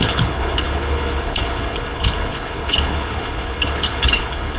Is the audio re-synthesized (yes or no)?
yes